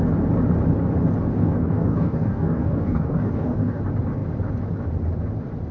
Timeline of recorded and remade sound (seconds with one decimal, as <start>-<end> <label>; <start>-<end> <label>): 0.0-1.3 recorded; 1.3-3.8 remade; 3.8-5.7 recorded